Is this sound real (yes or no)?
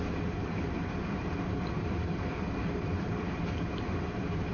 no